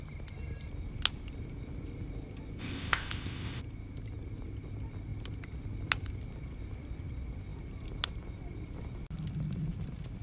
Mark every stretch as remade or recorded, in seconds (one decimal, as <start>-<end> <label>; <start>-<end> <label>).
0.0-2.6 recorded; 2.6-3.6 remade; 3.6-10.2 recorded